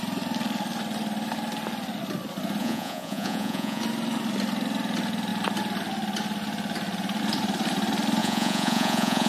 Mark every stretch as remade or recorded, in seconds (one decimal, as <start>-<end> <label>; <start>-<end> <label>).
0.0-2.6 recorded; 2.6-3.8 remade; 3.8-8.2 recorded; 8.2-9.3 remade